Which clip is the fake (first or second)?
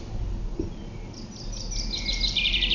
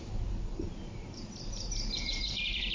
second